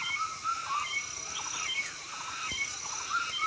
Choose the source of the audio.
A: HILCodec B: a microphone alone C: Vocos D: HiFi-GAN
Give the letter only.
B